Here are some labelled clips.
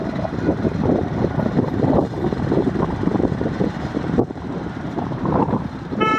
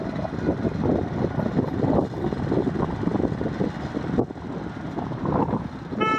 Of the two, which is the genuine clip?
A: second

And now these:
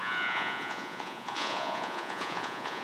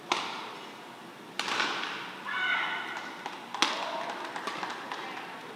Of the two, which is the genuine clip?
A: second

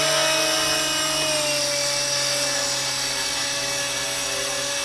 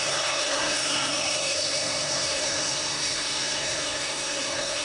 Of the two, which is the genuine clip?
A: first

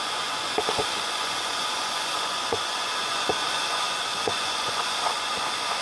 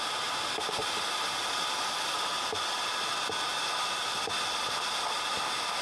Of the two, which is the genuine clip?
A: second